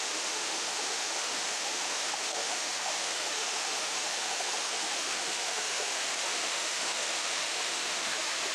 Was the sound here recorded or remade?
remade